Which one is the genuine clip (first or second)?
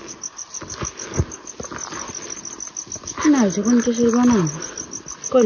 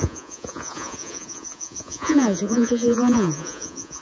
first